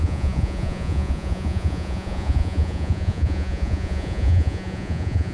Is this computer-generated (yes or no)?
yes